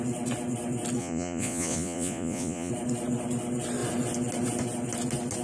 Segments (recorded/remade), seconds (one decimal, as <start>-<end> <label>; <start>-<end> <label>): 0.0-1.0 recorded; 1.0-2.7 remade; 2.7-5.4 recorded